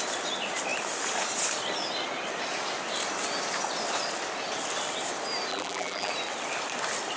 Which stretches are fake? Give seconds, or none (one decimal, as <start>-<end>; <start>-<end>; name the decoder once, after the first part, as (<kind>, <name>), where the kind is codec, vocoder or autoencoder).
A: 5.5-6.1 (vocoder, BigVGAN v2)

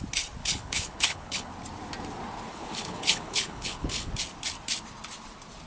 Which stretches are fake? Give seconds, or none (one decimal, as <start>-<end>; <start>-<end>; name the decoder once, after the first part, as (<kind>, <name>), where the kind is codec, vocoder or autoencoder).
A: 0.4-1.5 (codec, HILCodec); 2.5-4.1